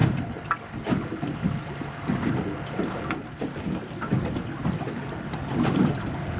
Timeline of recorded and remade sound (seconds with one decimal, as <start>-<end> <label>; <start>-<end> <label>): 0.0-6.4 recorded